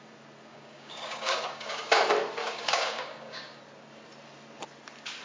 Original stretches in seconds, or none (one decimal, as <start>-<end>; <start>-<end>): 0.0-0.5; 2.0-2.4; 3.6-5.2